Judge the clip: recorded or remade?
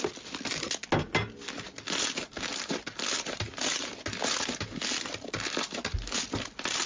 recorded